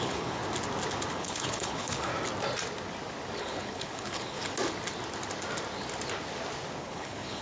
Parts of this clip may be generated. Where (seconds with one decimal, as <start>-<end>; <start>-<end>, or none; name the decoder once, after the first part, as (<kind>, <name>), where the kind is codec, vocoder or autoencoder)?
0.0-0.4 (codec, HILCodec); 1.1-2.1; 3.4-4.4; 6.8-7.4